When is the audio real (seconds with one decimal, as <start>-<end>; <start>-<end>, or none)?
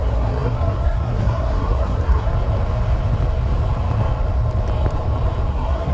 2.3-5.5